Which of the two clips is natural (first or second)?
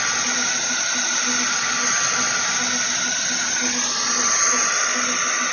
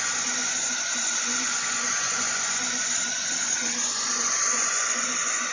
first